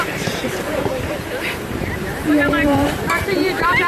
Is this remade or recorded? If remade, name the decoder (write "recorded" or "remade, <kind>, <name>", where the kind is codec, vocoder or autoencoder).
remade, vocoder, BigVGAN v2